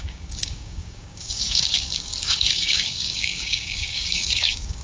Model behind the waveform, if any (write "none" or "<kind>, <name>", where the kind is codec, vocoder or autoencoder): codec, DAC